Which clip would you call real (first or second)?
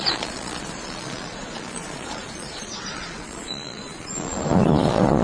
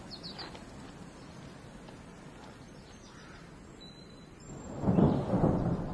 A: second